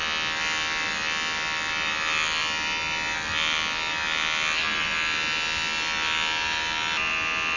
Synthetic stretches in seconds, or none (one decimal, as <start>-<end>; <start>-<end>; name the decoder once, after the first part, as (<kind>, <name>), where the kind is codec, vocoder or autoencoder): none